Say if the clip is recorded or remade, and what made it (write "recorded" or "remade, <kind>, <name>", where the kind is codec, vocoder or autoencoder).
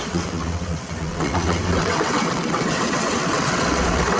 remade, vocoder, WaveNeXt